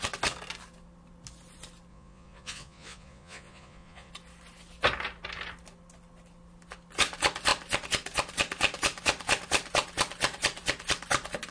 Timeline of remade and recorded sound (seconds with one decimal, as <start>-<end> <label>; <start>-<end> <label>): 0.0-1.9 recorded; 1.9-4.1 remade; 4.1-11.5 recorded